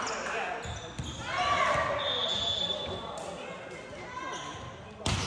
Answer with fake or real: real